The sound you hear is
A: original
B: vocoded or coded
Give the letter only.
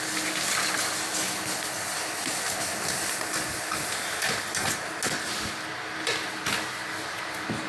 A